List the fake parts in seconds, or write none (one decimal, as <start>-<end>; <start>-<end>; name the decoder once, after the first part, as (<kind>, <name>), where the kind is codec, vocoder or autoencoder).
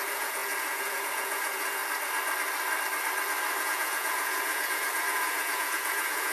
0.0-1.8 (vocoder, Vocos); 3.6-6.3